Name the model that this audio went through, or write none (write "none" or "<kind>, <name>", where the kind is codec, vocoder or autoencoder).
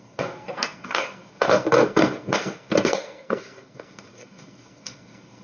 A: codec, SNAC